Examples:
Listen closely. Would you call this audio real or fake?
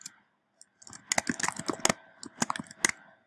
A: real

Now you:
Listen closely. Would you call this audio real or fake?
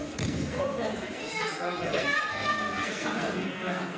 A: fake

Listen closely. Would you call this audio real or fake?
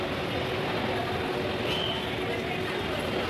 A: real